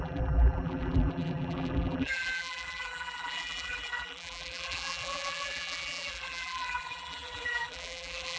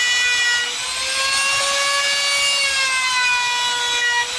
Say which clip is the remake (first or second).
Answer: first